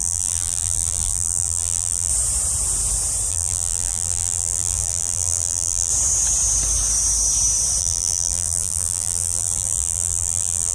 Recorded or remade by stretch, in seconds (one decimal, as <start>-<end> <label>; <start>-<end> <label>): 0.0-2.1 remade; 2.1-3.3 recorded; 3.3-5.9 remade; 5.9-7.8 recorded; 7.8-10.7 remade